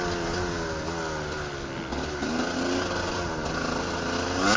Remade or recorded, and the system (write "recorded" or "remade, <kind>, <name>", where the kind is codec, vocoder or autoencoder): recorded